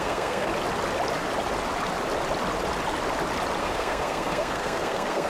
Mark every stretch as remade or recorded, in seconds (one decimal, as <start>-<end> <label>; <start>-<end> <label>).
0.0-0.5 remade; 0.5-3.6 recorded; 3.6-5.3 remade